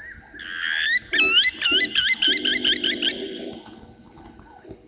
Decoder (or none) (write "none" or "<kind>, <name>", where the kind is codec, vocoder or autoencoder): none